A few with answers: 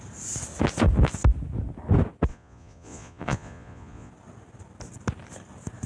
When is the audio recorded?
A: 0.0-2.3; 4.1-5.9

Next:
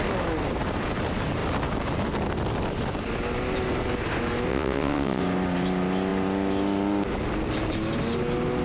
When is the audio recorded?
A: 0.0-4.5; 5.2-8.6

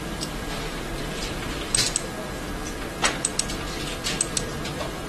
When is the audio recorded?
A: 0.0-4.5